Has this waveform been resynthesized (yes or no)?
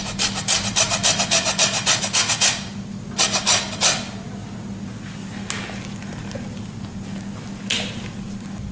no